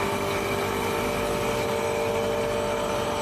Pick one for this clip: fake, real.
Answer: real